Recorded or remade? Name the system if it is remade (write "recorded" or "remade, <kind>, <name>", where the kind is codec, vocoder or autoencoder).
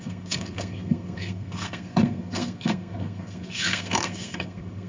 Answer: remade, codec, SNAC